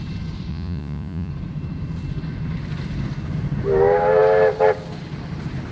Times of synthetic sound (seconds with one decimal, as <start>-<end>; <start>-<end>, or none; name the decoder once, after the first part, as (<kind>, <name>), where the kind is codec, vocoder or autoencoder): 0.5-1.3 (vocoder, Vocos)